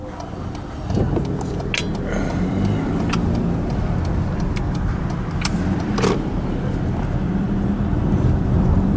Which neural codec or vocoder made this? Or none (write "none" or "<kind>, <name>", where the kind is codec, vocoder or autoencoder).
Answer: none